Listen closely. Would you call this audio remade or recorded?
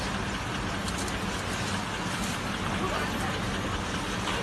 recorded